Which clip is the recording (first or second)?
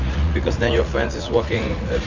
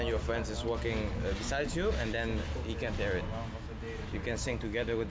second